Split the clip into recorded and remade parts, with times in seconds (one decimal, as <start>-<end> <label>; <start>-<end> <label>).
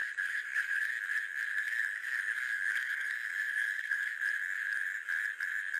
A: 0.0-0.9 remade; 0.9-1.5 recorded; 1.5-4.1 remade; 4.1-5.8 recorded